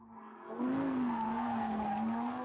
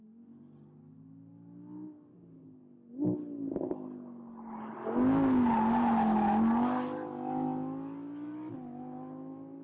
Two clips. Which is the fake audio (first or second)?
first